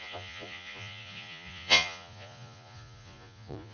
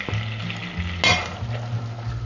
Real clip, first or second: second